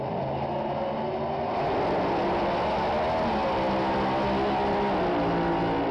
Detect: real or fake real